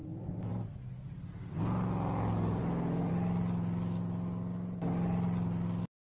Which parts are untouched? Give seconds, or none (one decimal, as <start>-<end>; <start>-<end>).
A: 0.5-2.6; 3.1-6.1